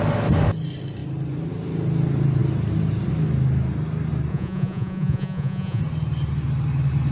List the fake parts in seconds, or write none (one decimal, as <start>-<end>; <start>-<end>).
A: 4.3-5.8